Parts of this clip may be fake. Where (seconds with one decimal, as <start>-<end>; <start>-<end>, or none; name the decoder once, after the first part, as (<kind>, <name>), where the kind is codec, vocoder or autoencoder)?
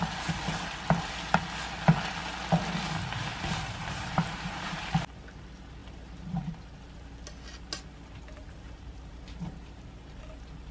3.3-4.9 (vocoder, BigVGAN v2); 5.8-6.6; 8.4-10.2